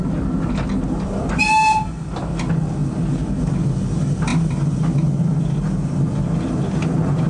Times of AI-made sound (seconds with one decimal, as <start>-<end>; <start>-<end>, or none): none